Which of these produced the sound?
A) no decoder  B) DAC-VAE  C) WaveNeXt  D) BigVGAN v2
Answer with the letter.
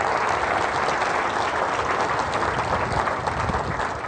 A